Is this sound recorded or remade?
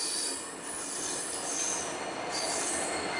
recorded